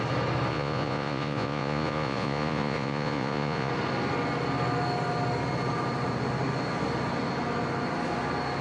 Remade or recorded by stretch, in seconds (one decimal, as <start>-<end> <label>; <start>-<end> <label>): 0.0-0.5 recorded; 0.5-3.7 remade; 3.7-8.6 recorded